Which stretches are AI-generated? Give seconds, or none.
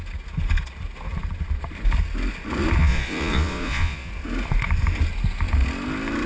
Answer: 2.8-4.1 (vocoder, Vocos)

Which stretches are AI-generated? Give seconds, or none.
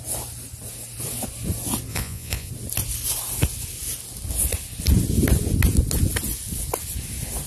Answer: 1.9-2.5 (vocoder, Vocos)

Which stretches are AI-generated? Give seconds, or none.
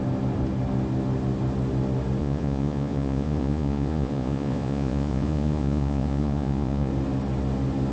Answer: 2.2-6.9 (vocoder, Vocos)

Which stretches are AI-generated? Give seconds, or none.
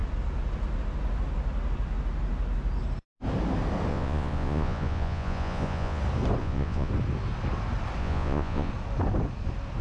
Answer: 3.9-6.0 (vocoder, Vocos); 6.4-6.9; 8.0-8.7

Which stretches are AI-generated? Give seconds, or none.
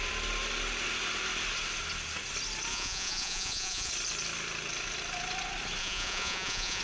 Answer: 2.7-3.9 (vocoder, Vocos); 5.8-6.8